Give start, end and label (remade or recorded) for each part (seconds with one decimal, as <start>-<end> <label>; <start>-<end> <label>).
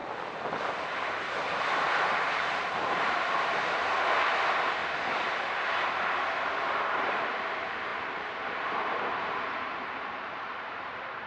0.0-2.2 recorded; 2.2-4.8 remade; 4.8-6.9 recorded; 6.9-11.3 remade